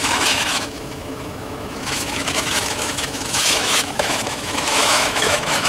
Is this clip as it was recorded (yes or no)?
no